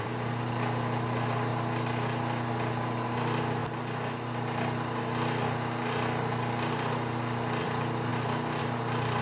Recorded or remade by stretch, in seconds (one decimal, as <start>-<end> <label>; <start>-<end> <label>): 0.0-1.5 remade; 1.5-2.7 recorded; 2.7-3.6 remade; 3.6-7.6 recorded; 7.6-8.1 remade; 8.1-8.6 recorded; 8.6-9.2 remade